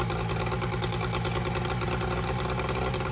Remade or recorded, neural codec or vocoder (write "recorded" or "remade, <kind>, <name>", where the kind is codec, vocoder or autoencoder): recorded